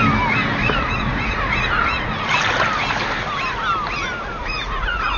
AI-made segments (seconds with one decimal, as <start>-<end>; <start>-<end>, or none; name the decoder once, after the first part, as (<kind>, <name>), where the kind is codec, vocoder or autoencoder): 0.6-2.1 (vocoder, Vocos); 4.4-5.2